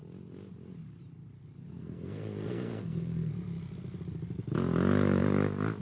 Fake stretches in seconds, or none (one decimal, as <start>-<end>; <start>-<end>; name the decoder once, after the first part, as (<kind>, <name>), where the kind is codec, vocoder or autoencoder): 1.8-3.3 (codec, SNAC)